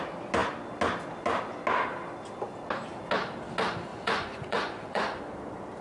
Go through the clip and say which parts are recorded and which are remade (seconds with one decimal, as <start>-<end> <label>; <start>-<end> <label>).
0.0-3.9 recorded; 3.9-5.2 remade; 5.2-5.8 recorded